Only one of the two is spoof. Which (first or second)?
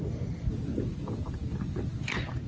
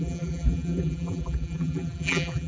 second